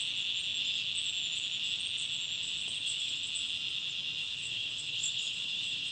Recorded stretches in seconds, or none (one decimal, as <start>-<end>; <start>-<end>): 0.0-2.6; 3.2-4.2